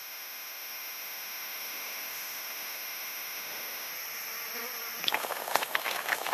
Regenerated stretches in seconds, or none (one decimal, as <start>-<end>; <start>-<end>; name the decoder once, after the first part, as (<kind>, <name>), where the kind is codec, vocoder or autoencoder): 0.0-3.9 (autoencoder, DAC-VAE); 5.1-6.3